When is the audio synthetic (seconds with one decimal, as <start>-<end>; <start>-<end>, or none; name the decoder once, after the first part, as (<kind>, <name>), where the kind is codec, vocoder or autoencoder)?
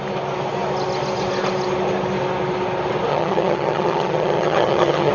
3.1-5.1 (vocoder, HiFi-GAN)